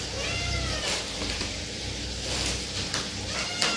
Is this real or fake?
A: real